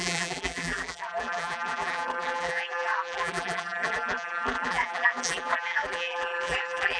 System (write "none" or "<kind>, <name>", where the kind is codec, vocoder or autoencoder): vocoder, BigVGAN v2